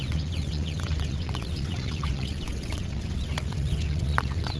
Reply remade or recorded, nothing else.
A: remade